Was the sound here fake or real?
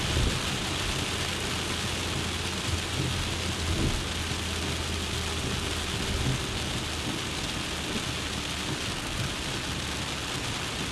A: real